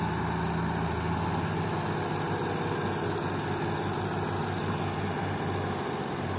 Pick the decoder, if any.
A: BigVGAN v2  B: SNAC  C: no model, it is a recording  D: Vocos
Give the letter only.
C